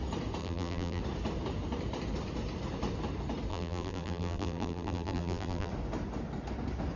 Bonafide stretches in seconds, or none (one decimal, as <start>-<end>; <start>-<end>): 0.0-0.4; 1.0-3.5; 5.7-7.0

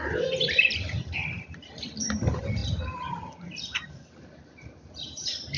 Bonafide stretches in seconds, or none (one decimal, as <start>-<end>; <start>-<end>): 2.6-3.3

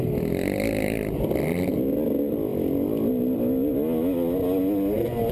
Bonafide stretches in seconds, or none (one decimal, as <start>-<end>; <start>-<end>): 1.7-5.3

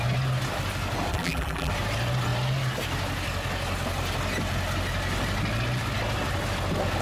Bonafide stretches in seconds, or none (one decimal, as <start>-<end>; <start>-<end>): 0.0-1.1; 1.7-7.0

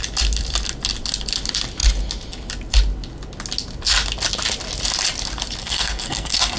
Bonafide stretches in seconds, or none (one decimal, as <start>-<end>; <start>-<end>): 0.0-5.6

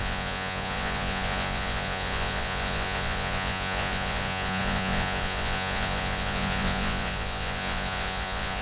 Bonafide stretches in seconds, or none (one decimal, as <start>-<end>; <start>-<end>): none

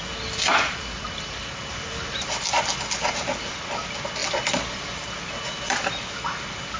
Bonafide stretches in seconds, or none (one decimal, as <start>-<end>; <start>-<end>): 0.0-6.8

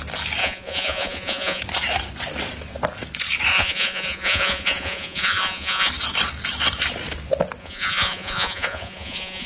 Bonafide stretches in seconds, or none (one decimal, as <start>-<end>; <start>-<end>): 0.0-0.4; 1.6-3.5; 5.9-7.6